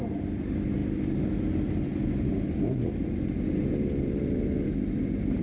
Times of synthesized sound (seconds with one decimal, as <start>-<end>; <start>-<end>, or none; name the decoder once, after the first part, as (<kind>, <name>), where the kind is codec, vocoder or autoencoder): none